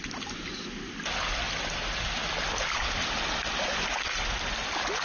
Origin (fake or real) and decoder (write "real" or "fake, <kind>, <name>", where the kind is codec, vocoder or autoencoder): real